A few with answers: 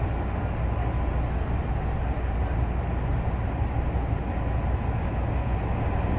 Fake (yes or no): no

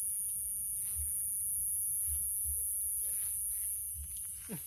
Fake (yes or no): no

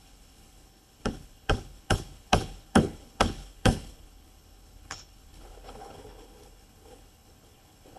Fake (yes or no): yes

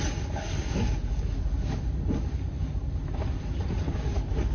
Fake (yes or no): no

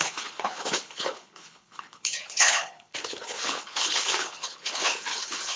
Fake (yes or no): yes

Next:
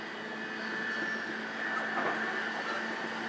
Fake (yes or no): no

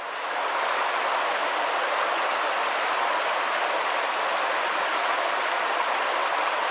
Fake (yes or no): no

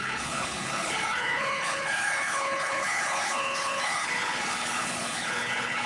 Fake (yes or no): yes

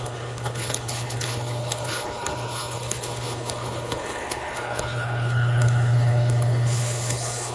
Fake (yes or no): yes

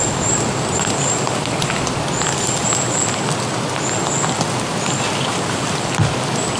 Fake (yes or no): no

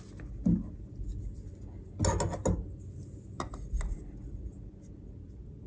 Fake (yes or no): no